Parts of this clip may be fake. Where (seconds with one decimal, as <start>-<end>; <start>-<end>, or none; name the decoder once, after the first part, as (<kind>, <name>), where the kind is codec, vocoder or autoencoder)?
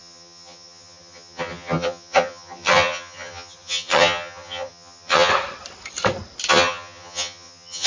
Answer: 0.0-5.3 (vocoder, HiFi-GAN); 6.5-7.9